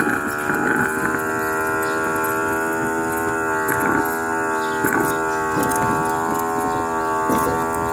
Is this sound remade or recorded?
recorded